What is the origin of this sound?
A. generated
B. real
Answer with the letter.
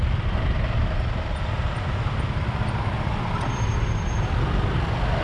B